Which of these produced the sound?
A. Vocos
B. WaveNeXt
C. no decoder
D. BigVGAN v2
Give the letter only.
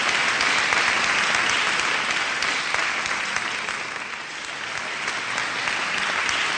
C